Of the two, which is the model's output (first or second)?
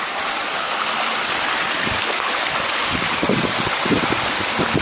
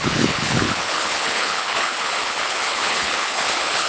second